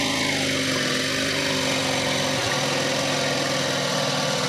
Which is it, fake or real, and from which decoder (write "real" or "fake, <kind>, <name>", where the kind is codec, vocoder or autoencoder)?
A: real